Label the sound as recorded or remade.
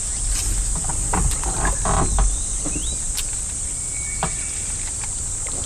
recorded